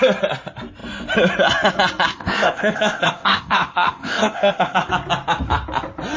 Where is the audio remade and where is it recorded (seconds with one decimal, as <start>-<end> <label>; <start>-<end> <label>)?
0.0-2.1 recorded; 2.1-4.9 remade; 4.9-6.2 recorded